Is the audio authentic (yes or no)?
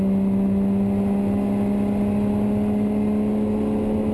yes